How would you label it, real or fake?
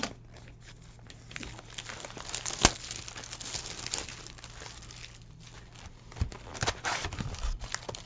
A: real